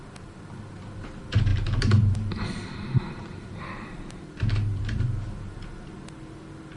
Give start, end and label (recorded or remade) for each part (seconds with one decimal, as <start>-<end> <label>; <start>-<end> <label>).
0.0-1.5 recorded; 1.5-5.0 remade; 5.0-6.8 recorded